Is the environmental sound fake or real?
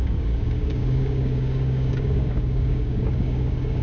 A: fake